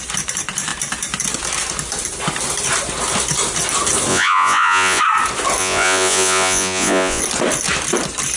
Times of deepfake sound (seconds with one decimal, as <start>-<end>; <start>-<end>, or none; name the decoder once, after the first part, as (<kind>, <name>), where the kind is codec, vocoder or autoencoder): 4.1-5.0 (vocoder, Vocos); 5.6-7.2